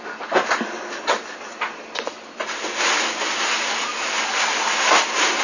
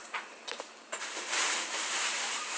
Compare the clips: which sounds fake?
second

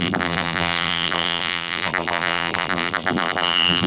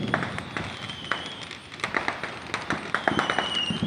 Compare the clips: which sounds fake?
first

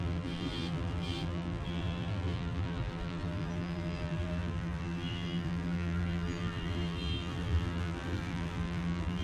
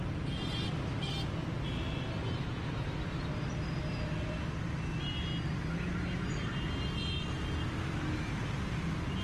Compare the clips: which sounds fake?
first